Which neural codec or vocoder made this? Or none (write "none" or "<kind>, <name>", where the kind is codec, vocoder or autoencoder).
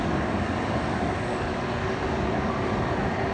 codec, DAC